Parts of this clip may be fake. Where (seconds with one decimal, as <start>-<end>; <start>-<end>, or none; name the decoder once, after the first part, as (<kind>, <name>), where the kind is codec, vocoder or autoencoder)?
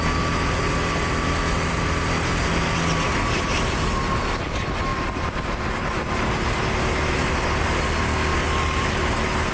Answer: none